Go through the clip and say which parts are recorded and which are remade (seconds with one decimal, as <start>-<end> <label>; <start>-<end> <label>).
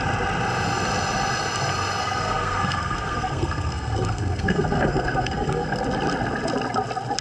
0.0-2.0 recorded; 2.0-5.8 remade; 5.8-7.2 recorded